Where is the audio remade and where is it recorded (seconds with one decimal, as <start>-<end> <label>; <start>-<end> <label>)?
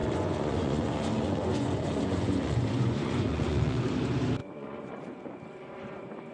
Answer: 0.0-3.8 remade; 3.8-4.4 recorded; 4.4-5.4 remade; 5.4-6.3 recorded